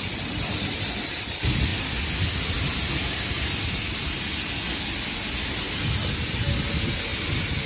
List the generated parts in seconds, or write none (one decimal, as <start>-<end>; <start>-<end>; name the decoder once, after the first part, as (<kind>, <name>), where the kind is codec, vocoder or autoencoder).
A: none